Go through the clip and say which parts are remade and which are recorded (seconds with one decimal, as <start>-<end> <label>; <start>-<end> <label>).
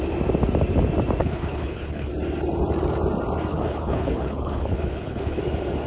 0.0-1.2 recorded; 1.2-2.1 remade; 2.1-3.5 recorded; 3.5-5.4 remade; 5.4-5.9 recorded